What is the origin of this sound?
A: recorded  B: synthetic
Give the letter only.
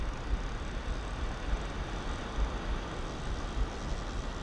A